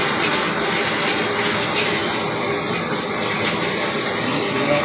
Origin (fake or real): real